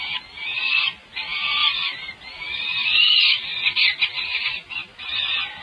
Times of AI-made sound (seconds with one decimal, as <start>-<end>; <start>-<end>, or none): 1.6-3.1; 3.5-5.0